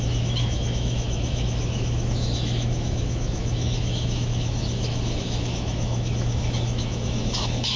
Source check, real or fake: fake